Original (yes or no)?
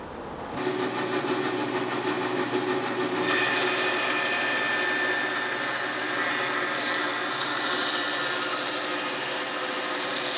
yes